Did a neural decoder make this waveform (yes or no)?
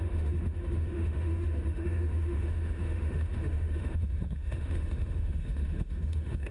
yes